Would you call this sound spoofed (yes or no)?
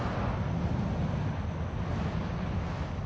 no